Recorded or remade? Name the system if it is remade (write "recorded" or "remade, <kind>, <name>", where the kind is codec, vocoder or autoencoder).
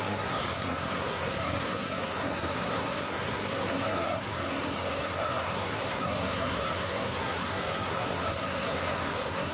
remade, codec, SNAC